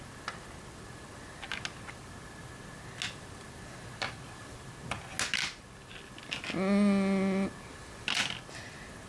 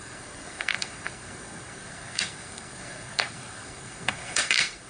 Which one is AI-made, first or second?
second